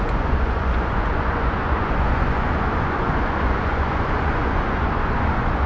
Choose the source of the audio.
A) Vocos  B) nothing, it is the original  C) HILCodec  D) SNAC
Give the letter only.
A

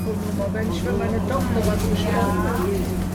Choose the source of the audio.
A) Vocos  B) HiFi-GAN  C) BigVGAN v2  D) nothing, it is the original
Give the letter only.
D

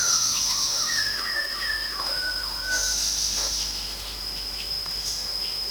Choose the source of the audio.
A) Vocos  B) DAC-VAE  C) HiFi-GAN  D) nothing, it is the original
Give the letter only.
B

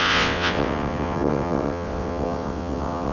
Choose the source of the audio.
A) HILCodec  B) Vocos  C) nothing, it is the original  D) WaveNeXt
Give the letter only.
D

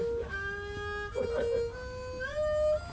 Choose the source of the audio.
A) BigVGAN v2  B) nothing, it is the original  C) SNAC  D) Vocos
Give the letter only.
B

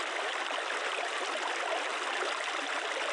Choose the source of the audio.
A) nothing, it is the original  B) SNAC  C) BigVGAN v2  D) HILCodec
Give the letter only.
A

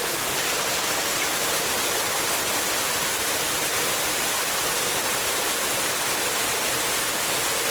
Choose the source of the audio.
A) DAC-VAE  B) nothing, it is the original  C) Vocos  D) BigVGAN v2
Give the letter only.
B